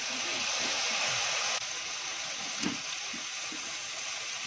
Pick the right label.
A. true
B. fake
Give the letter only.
B